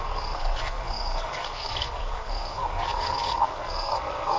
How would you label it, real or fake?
fake